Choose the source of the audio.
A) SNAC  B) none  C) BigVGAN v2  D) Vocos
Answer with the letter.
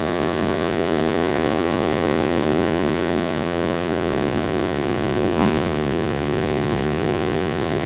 D